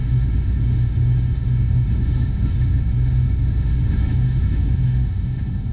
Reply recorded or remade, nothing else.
remade